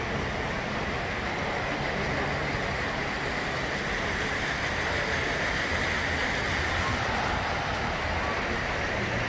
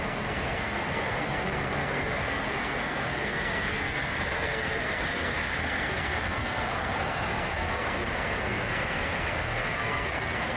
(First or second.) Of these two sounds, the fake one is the second